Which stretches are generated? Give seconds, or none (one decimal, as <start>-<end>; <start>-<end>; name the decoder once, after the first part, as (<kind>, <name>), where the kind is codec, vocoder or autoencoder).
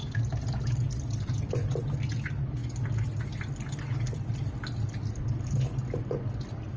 none